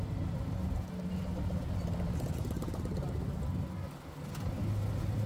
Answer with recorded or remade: recorded